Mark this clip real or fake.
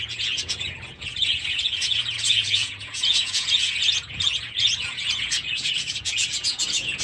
fake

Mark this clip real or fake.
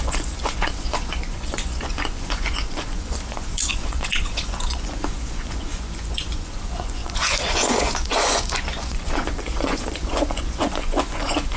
fake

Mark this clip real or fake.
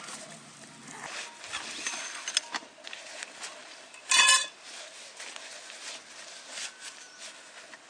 real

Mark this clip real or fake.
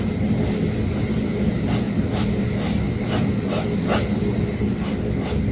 real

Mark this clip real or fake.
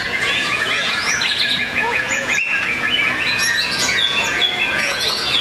fake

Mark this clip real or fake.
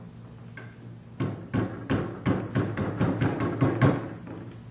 real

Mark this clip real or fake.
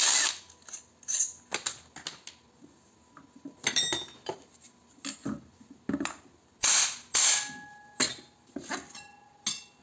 real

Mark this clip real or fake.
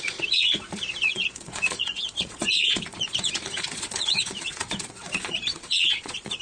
fake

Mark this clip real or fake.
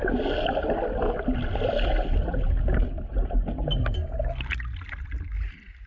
real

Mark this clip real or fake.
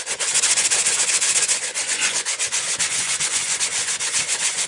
fake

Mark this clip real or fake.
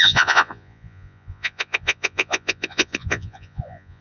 fake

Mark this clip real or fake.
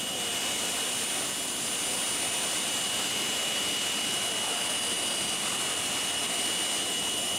real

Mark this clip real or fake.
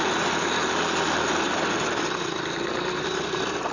real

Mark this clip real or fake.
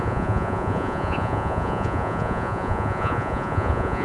fake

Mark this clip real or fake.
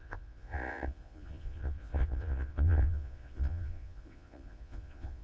fake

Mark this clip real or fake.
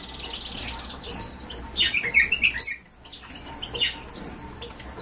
real